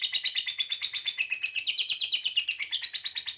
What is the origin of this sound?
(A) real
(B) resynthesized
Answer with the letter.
A